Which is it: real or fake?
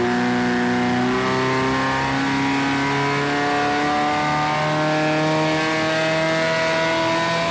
real